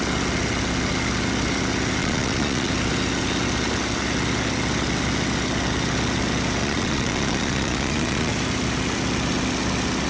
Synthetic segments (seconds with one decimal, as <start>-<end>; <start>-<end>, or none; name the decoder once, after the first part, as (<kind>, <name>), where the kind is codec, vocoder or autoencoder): 2.0-2.7 (vocoder, Vocos); 6.6-8.3